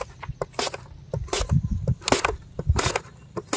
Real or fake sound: real